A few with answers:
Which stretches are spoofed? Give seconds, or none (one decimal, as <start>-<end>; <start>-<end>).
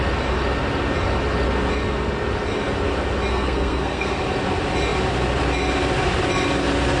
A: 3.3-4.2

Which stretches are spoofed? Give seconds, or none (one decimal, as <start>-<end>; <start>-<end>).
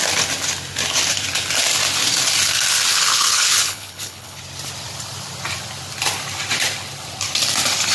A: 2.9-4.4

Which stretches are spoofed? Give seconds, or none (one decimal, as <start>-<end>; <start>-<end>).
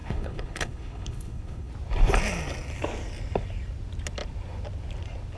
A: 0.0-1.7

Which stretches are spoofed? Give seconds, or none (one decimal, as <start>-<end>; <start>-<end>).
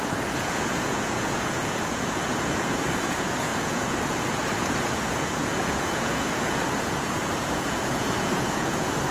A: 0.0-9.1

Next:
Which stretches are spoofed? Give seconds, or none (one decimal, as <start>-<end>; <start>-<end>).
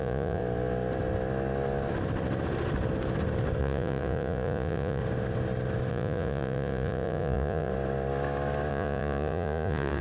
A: 0.0-0.4; 3.6-5.0; 5.9-7.7; 8.7-10.0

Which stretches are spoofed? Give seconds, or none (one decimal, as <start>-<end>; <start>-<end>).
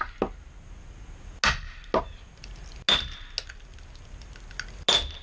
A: none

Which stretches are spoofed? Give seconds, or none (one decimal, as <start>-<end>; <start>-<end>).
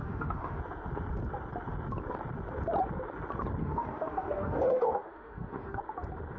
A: 0.0-0.6; 3.6-5.8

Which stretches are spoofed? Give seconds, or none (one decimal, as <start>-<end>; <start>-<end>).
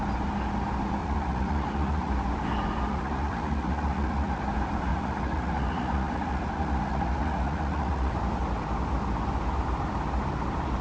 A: 1.0-2.1; 2.9-4.4; 4.9-8.1